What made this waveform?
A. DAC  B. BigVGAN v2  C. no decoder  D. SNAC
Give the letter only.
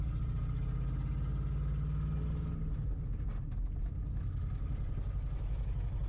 C